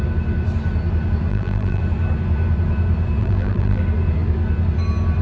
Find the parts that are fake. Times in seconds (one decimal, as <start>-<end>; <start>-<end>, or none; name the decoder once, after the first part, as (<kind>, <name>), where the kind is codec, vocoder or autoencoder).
1.3-1.8 (vocoder, BigVGAN v2); 3.2-3.8